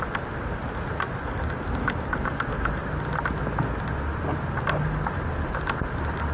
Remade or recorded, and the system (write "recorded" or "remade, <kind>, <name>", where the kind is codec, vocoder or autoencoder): recorded